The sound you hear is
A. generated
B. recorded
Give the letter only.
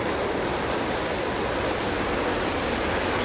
B